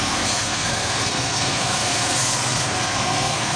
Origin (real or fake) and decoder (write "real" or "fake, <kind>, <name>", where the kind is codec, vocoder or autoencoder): fake, codec, SNAC